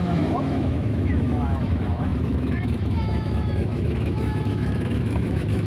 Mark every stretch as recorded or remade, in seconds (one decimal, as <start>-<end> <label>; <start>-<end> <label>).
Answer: 0.0-5.7 remade

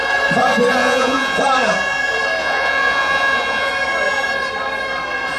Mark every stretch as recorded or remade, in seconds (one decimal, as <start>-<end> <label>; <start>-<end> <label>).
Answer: 0.0-0.8 recorded; 0.8-1.4 remade; 1.4-2.4 recorded; 2.4-3.7 remade; 3.7-5.4 recorded